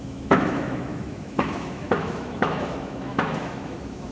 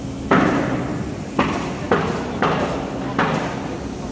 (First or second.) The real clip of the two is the second